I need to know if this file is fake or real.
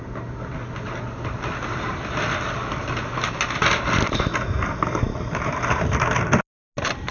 real